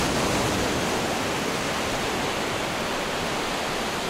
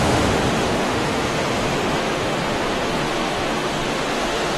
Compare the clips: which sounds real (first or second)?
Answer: first